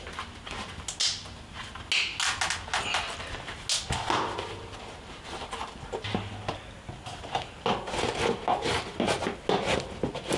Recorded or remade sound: recorded